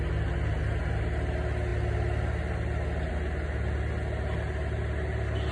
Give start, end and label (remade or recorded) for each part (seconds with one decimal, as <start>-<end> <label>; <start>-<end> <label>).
0.0-5.5 recorded